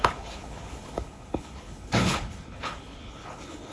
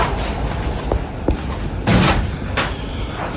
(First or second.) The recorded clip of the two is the second